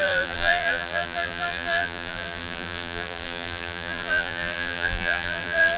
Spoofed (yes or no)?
yes